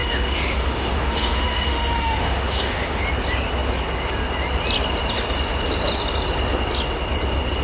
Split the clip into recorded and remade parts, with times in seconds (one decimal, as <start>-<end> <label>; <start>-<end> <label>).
0.0-3.0 remade; 3.0-7.6 recorded

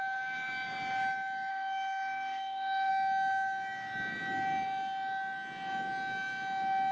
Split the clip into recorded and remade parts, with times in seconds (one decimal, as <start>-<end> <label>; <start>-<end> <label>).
0.0-1.5 recorded; 1.5-2.9 remade; 2.9-6.9 recorded